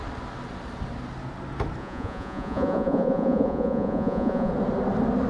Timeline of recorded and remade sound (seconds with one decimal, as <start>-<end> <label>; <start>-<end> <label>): 0.0-1.8 recorded; 1.8-4.5 remade; 4.5-5.3 recorded